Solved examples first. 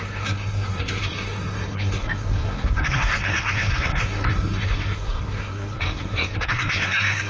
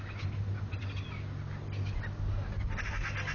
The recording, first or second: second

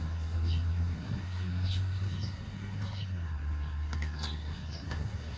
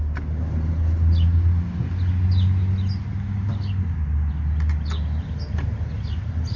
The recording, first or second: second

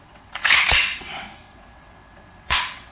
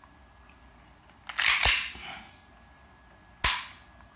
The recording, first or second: second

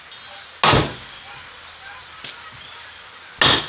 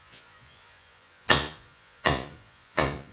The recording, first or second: first